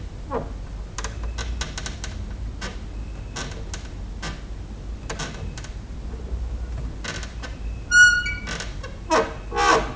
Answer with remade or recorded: recorded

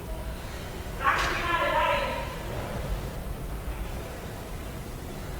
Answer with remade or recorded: remade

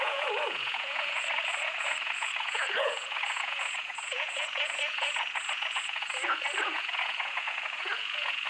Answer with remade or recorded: remade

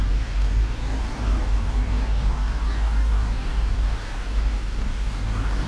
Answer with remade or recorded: remade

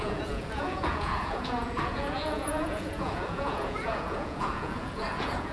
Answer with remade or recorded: remade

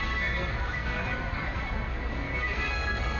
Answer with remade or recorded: remade